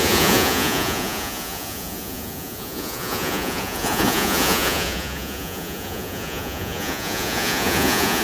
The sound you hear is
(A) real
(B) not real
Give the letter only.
B